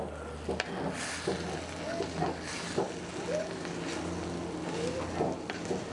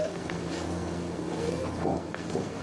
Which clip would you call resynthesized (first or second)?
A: second